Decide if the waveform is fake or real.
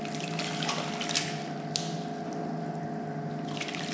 real